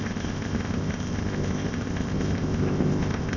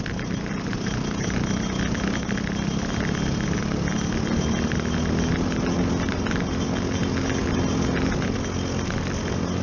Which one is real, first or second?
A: second